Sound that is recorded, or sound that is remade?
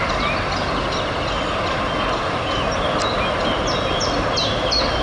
recorded